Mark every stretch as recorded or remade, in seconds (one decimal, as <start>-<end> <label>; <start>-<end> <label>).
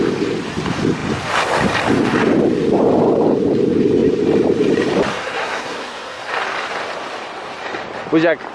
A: 0.0-5.1 recorded; 5.1-6.3 remade; 6.3-8.5 recorded